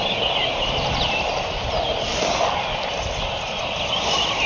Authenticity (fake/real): real